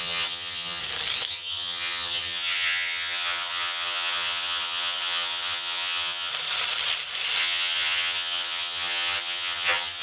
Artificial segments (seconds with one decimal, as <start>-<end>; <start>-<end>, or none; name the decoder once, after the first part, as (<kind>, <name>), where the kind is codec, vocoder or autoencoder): 0.0-0.8 (vocoder, HiFi-GAN); 1.3-6.3; 7.4-10.0